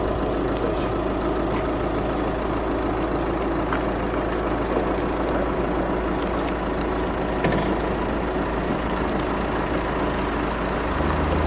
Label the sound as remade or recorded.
recorded